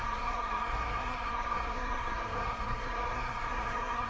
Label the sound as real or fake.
fake